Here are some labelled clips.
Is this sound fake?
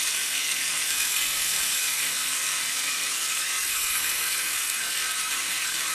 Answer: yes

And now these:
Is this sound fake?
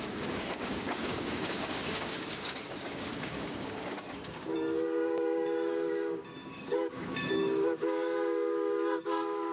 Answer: yes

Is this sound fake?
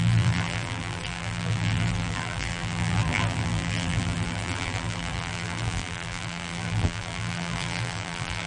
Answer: yes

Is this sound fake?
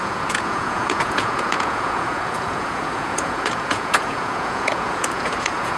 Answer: yes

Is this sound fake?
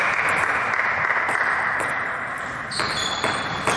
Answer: no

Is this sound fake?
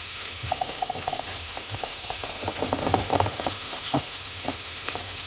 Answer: yes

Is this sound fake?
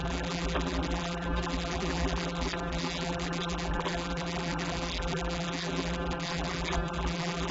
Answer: yes